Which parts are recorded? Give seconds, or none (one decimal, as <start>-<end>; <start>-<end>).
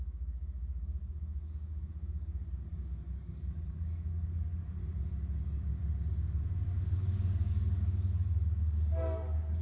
4.8-6.7